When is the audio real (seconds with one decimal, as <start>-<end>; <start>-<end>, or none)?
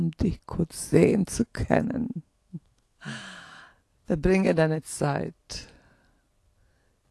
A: 0.0-1.1; 3.6-7.1